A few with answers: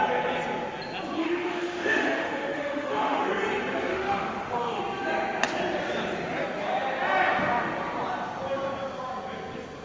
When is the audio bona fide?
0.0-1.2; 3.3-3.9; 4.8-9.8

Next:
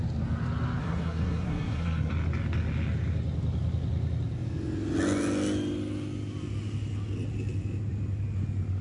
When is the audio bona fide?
0.0-0.8; 2.1-8.8

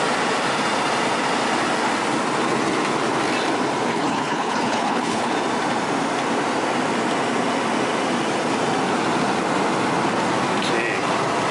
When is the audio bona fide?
0.0-3.9; 5.3-11.5

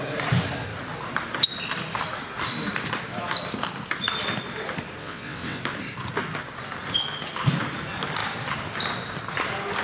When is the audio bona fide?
0.0-5.0; 5.6-9.8

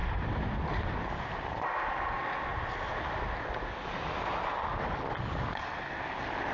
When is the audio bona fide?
0.9-6.5

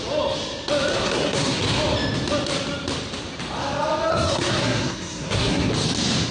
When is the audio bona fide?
0.0-0.9; 1.6-4.1; 5.7-6.3

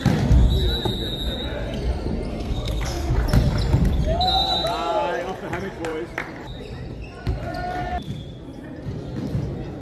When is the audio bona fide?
0.0-2.3; 3.1-9.8